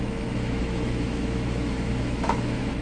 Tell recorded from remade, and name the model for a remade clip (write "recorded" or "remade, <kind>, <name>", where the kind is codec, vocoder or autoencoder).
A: remade, autoencoder, DAC-VAE